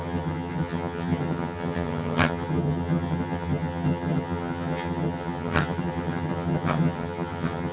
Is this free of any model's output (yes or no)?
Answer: no